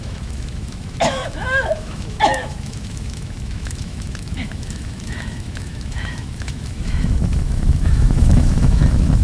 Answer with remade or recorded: remade